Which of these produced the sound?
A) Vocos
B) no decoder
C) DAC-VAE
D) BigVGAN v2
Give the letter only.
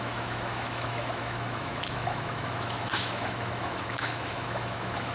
C